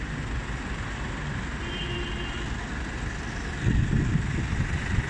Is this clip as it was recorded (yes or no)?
yes